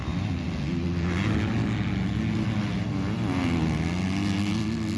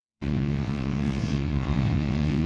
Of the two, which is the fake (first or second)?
second